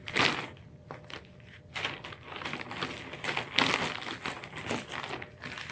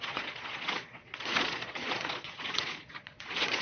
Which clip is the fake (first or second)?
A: second